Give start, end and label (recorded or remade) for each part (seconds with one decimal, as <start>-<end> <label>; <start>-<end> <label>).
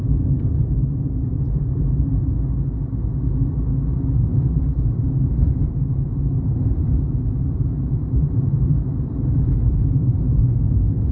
0.0-1.2 recorded; 1.2-2.4 remade; 2.4-4.3 recorded; 4.3-5.1 remade; 5.1-5.6 recorded; 5.6-10.4 remade; 10.4-11.1 recorded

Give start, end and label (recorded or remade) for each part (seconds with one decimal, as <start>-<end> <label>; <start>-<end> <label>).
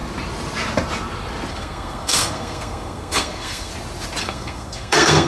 0.0-1.5 recorded; 1.5-3.7 remade; 3.7-4.2 recorded; 4.2-5.3 remade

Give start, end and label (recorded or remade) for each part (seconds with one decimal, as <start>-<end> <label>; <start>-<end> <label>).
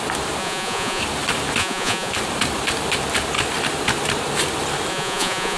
0.0-0.4 recorded; 0.4-1.0 remade; 1.0-1.6 recorded; 1.6-2.1 remade; 2.1-4.9 recorded; 4.9-5.6 remade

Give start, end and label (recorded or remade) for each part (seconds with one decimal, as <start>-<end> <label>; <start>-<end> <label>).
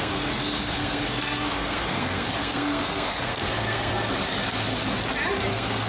0.0-3.9 remade; 3.9-5.5 recorded; 5.5-5.9 remade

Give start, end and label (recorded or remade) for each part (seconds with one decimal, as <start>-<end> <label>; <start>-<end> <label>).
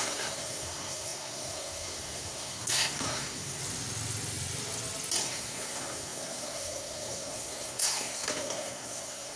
0.0-3.6 remade; 3.6-5.2 recorded; 5.2-9.4 remade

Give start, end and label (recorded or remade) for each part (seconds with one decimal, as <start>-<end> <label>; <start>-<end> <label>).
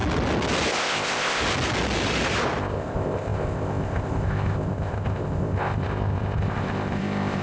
0.0-0.7 recorded; 0.7-1.4 remade; 1.4-2.6 recorded; 2.6-7.4 remade